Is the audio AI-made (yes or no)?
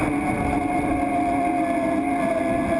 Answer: no